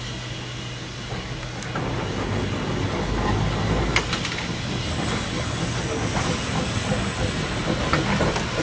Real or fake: real